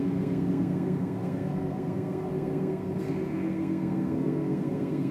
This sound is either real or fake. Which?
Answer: fake